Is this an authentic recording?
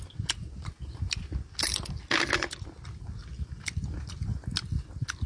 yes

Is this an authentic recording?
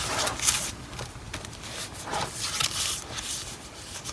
yes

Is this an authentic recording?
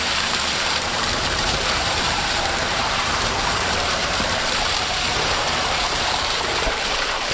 no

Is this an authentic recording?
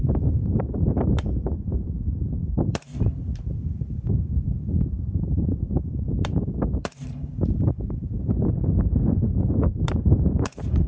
no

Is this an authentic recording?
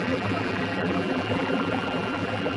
no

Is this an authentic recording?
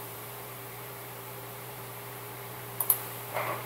no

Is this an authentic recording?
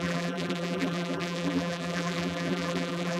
no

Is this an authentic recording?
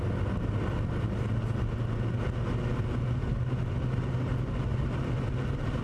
yes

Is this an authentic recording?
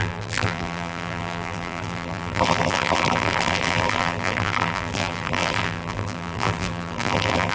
no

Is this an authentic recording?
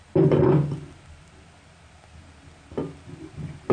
yes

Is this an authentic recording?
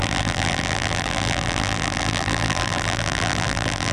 no